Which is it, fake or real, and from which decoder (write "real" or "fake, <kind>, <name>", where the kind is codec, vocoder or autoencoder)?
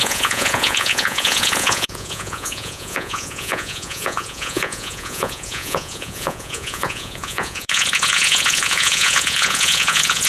fake, vocoder, Vocos